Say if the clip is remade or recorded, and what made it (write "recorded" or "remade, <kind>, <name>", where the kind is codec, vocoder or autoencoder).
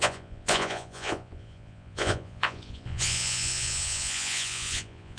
remade, vocoder, Vocos